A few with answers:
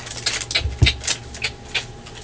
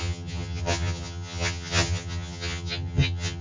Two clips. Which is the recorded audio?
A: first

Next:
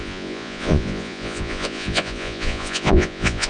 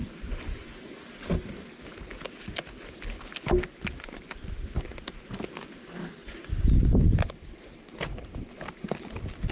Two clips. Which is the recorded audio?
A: second